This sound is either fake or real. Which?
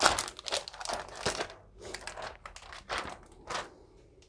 real